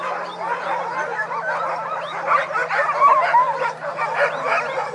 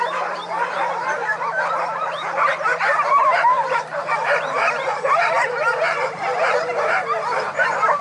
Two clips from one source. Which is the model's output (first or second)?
second